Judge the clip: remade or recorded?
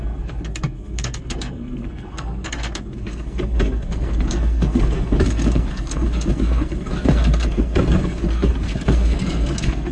remade